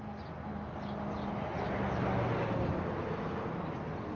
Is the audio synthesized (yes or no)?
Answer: no